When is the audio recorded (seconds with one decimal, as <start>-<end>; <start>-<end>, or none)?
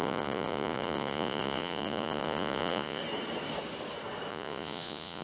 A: 3.0-4.3